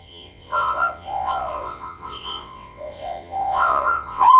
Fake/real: fake